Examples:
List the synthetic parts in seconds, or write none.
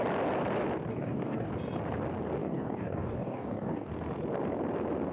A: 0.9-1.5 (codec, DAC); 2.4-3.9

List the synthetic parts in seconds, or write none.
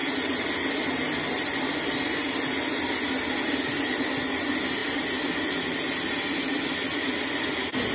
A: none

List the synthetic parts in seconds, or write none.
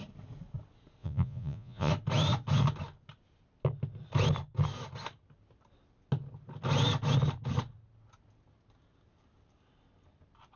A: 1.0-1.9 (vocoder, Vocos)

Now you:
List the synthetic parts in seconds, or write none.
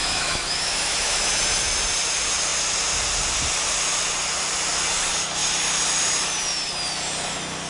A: 0.0-1.4 (autoencoder, DAC-VAE)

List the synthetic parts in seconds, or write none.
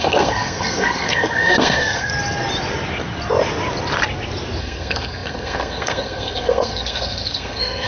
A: 0.0-2.1 (codec, SNAC); 4.6-7.9